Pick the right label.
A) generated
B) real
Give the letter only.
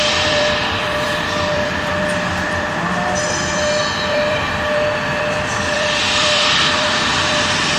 A